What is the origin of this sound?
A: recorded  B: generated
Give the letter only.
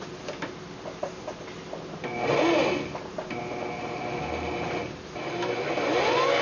A